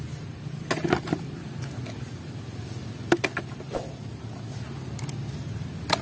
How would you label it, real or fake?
real